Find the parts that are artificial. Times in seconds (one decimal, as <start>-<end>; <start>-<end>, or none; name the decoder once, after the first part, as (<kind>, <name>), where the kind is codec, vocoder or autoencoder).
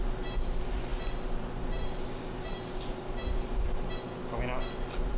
none